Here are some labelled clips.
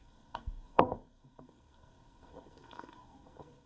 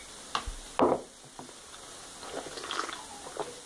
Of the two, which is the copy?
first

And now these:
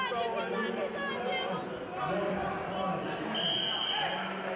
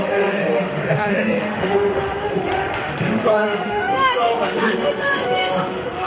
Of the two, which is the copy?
second